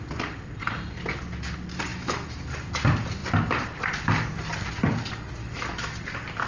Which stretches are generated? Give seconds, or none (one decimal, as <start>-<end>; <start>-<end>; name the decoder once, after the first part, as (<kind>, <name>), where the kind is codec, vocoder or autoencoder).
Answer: 1.9-2.4 (autoencoder, DAC-VAE); 5.4-6.0